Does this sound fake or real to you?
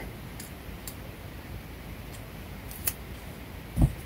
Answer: real